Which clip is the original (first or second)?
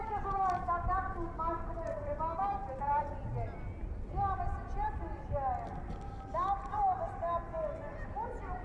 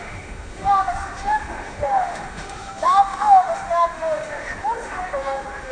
first